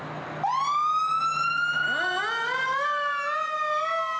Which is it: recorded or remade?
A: recorded